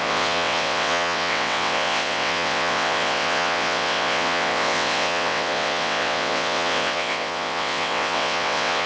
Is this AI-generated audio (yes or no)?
yes